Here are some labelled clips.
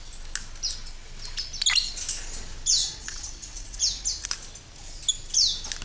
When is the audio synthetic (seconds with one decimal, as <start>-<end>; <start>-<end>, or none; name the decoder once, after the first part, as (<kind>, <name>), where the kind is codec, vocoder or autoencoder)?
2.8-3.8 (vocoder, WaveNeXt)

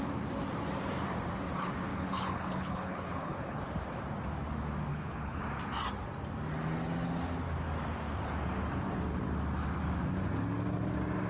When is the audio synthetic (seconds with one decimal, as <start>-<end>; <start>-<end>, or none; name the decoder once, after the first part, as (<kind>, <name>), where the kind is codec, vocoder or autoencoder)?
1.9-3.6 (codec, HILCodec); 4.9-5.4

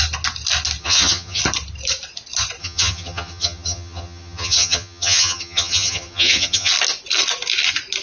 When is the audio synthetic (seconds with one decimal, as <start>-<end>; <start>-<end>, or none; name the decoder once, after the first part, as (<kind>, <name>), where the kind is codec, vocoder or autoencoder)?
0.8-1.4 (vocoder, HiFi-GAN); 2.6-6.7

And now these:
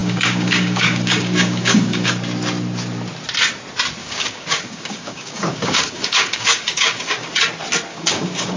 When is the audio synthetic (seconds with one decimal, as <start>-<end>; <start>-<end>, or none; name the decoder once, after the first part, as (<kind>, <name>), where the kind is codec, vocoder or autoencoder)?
0.0-2.1 (codec, DAC); 4.0-7.3; 7.9-8.6

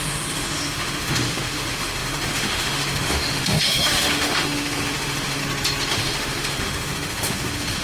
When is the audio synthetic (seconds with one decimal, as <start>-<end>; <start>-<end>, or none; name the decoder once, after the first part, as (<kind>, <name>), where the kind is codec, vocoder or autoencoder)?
0.0-5.4 (autoencoder, DAC-VAE); 5.9-7.8